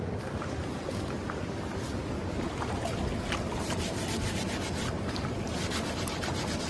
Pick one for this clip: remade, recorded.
recorded